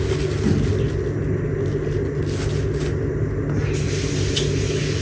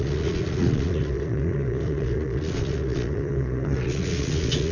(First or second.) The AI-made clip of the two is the second